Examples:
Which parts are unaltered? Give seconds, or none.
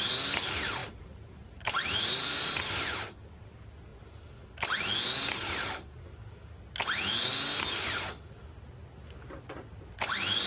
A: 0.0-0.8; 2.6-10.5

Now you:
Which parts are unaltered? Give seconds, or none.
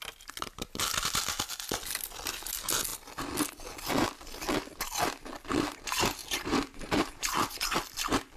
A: 0.0-6.2; 7.6-8.4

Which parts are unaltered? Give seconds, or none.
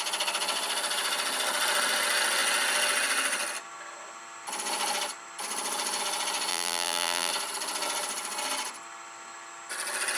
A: 0.0-6.5; 7.3-10.2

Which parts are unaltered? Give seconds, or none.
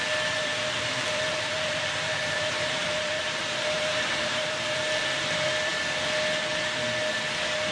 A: 0.0-0.4; 4.8-7.7